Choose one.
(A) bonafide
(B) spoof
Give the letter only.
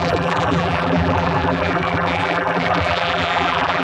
B